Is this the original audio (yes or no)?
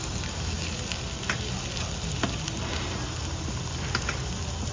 yes